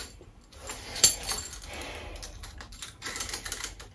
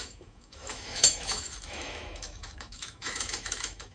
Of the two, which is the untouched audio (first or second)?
first